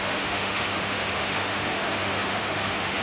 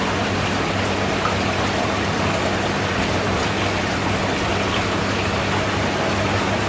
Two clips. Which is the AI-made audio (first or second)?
first